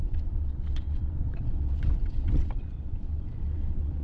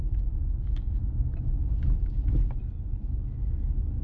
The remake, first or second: first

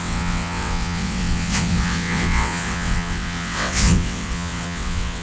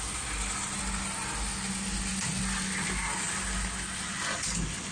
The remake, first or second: first